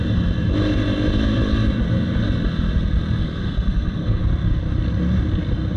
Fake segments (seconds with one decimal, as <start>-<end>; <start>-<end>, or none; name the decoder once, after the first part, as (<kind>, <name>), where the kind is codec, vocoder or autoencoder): 3.2-4.2 (codec, SNAC)